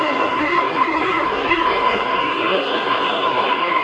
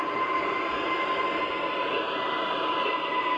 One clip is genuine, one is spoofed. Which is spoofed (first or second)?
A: first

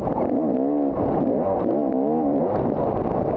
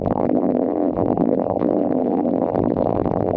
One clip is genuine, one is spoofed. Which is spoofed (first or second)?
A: second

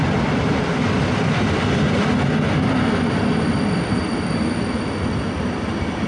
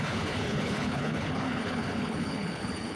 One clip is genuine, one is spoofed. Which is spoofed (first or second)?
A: second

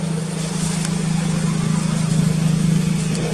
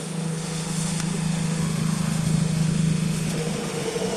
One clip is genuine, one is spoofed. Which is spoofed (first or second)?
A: second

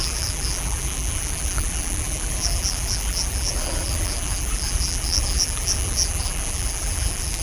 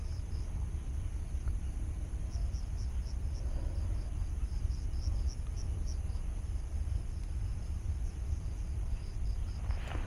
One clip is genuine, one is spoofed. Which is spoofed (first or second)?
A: first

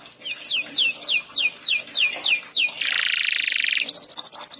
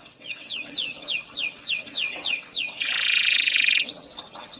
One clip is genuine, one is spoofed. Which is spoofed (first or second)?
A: second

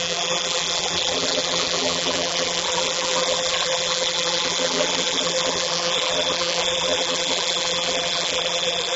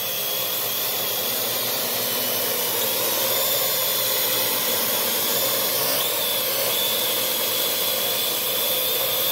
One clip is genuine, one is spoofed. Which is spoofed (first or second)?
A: first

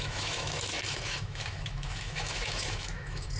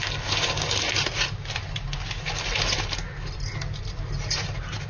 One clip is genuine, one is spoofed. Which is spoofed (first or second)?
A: first